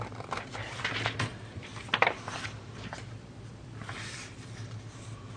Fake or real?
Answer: real